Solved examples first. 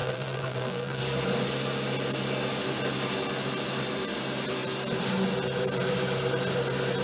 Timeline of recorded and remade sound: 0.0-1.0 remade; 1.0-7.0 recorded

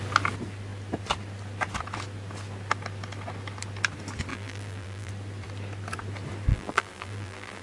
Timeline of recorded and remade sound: 0.0-4.3 recorded; 4.3-5.1 remade; 5.1-6.5 recorded; 6.5-7.6 remade

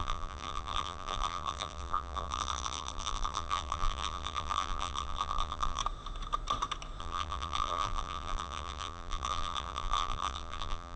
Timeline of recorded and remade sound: 0.0-5.8 remade; 5.8-7.0 recorded; 7.0-11.0 remade

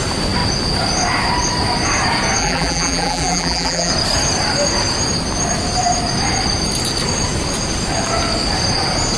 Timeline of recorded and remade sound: 0.0-2.4 recorded; 2.4-3.9 remade; 3.9-9.2 recorded